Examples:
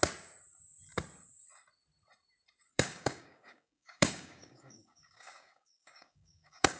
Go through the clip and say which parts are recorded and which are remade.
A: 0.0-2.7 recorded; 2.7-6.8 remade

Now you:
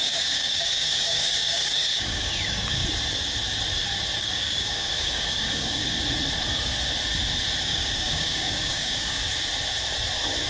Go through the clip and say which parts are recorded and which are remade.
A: 0.0-2.8 remade; 2.8-4.2 recorded; 4.2-5.8 remade; 5.8-7.6 recorded; 7.6-9.2 remade; 9.2-10.5 recorded

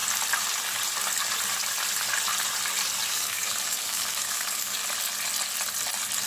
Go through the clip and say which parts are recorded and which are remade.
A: 0.0-3.1 recorded; 3.1-4.8 remade; 4.8-6.3 recorded

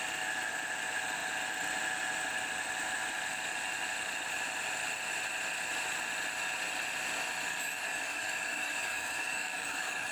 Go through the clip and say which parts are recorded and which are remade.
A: 0.0-7.5 recorded; 7.5-10.1 remade

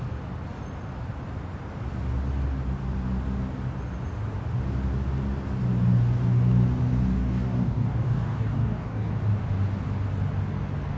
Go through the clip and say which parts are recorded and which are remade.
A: 0.0-7.2 recorded; 7.2-9.1 remade; 9.1-11.0 recorded